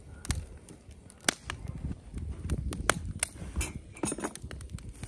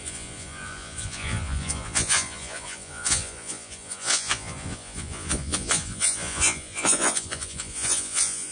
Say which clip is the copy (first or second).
second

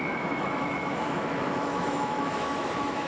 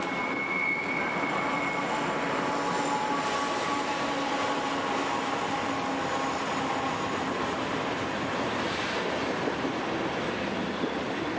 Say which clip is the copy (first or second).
first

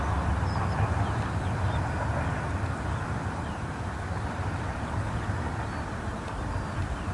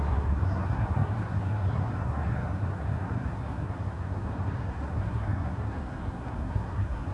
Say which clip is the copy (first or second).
second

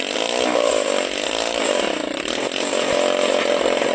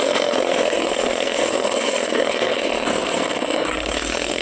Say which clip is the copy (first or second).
second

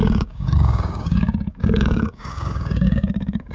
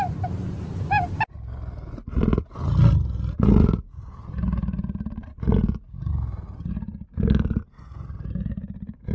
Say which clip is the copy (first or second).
first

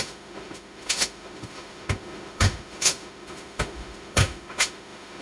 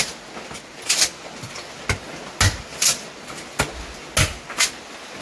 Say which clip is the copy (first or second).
first